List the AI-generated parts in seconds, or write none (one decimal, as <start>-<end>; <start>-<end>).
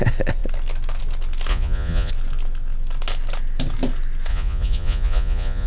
1.5-2.1; 4.3-5.7